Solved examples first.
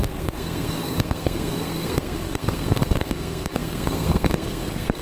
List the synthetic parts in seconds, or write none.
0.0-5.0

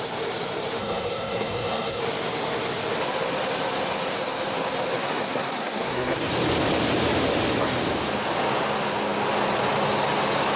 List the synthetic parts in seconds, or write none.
0.8-2.0; 5.0-6.2

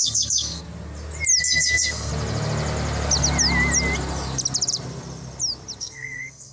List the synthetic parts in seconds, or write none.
0.0-0.6; 1.4-2.1; 5.8-6.5

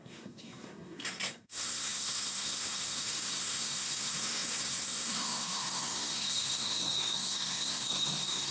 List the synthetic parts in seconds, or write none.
0.0-8.5

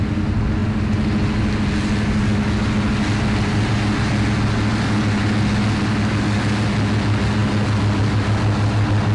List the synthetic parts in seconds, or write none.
none

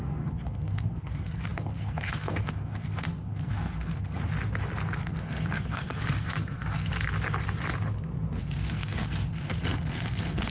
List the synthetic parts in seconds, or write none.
0.0-4.3; 5.0-6.9; 8.4-10.5